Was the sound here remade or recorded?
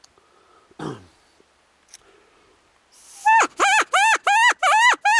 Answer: recorded